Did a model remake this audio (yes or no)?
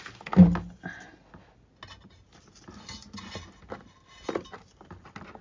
no